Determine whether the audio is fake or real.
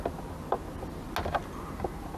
real